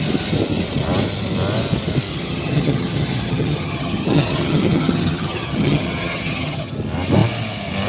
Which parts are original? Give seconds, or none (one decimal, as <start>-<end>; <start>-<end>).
0.0-2.1; 6.8-7.9

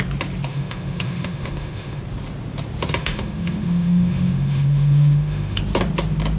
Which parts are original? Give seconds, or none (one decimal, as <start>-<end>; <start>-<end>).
0.0-0.5; 2.0-3.0; 5.6-6.4

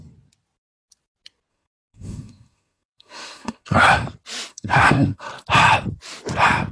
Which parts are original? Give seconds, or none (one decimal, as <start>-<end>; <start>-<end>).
0.0-1.5; 3.8-4.5; 5.3-6.7